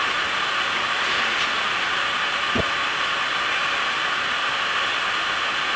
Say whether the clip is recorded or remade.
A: recorded